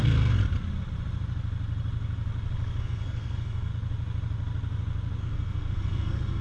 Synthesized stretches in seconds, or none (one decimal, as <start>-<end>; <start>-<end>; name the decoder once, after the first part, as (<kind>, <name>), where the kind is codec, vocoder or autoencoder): 0.0-0.4 (codec, SNAC); 2.8-3.7; 5.2-6.4